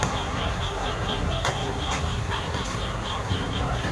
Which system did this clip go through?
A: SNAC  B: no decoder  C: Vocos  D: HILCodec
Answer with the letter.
A